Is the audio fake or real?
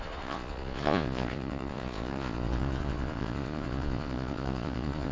fake